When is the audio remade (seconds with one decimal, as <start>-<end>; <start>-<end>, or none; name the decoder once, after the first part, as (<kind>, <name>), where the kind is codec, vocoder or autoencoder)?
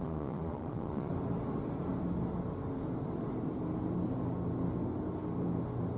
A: 0.0-1.1 (vocoder, Vocos)